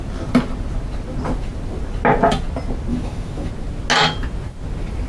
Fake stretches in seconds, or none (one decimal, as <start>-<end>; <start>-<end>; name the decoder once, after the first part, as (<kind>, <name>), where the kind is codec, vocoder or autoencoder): 2.9-3.5 (autoencoder, DAC-VAE)

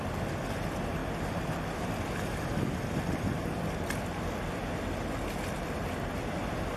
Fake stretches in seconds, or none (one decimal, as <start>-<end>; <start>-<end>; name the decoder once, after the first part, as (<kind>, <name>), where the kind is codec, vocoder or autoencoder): none

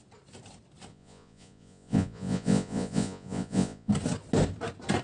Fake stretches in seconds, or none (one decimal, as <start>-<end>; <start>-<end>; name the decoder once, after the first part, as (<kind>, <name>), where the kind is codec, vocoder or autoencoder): 0.9-3.9 (vocoder, Vocos)

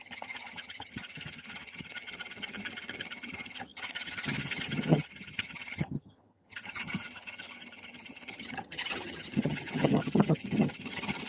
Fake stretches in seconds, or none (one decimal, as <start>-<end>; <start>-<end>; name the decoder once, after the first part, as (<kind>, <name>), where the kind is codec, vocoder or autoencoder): 0.0-11.3 (vocoder, HiFi-GAN)

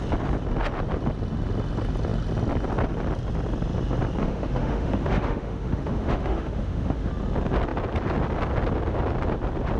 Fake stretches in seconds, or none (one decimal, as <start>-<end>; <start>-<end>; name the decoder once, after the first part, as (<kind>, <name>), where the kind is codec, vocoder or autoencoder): 4.2-7.1 (autoencoder, DAC-VAE)

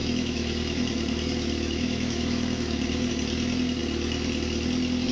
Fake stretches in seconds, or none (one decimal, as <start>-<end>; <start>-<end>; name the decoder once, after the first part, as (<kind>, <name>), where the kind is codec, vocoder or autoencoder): 0.0-3.1 (autoencoder, DAC-VAE)